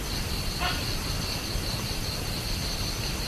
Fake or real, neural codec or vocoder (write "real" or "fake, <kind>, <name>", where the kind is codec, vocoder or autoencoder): real